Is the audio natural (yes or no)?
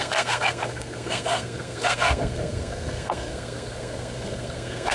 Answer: no